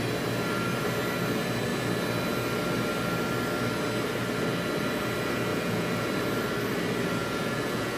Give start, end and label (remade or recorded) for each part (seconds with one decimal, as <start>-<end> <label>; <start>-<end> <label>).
0.0-5.5 recorded; 5.5-6.1 remade; 6.1-7.2 recorded; 7.2-8.0 remade